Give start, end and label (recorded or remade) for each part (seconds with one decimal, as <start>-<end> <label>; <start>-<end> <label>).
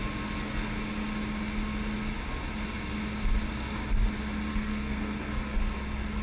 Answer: 0.0-4.5 recorded; 4.5-5.6 remade; 5.6-6.2 recorded